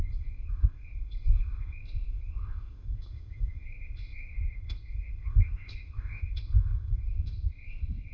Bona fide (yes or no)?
no